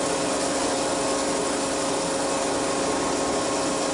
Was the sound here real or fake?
real